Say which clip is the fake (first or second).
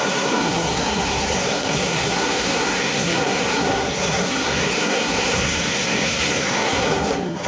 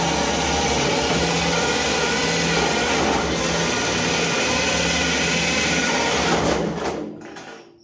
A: first